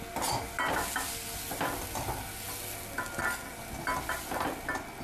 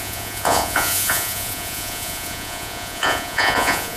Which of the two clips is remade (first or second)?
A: second